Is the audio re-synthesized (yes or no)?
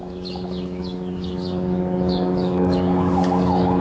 yes